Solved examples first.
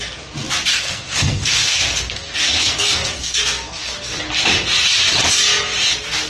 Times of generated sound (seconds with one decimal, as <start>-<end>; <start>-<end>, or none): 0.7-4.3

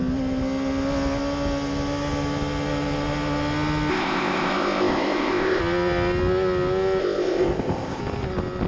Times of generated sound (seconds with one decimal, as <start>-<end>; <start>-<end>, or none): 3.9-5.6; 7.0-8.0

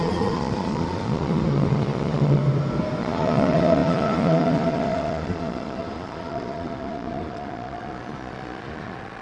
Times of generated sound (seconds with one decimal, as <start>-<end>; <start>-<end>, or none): 0.0-2.4; 3.0-9.2